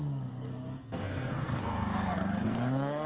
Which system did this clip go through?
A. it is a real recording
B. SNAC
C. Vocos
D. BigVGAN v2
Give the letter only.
B